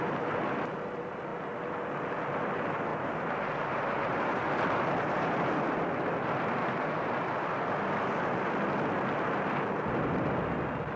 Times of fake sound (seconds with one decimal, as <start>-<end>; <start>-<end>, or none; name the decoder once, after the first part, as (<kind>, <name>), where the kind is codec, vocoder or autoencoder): 2.9-4.5 (vocoder, BigVGAN v2); 6.6-7.1